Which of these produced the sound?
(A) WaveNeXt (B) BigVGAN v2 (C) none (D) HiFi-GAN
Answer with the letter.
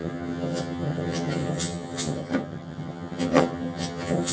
D